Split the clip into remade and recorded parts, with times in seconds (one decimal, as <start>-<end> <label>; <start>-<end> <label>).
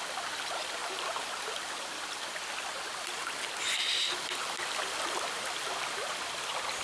0.0-0.8 recorded; 0.8-2.0 remade; 2.0-6.8 recorded